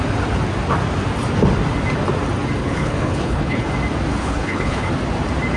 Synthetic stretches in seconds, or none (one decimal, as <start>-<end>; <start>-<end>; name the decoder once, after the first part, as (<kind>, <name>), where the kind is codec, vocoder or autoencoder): 2.6-3.7 (codec, HILCodec); 4.2-4.9